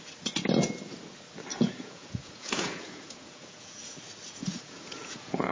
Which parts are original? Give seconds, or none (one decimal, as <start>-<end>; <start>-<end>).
0.0-1.5; 4.0-4.4